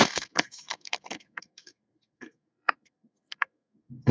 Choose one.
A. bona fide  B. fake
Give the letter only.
B